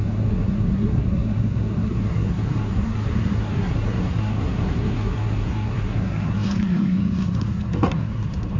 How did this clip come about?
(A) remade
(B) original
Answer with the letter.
A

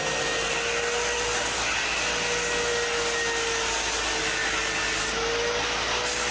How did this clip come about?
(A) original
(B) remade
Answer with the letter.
A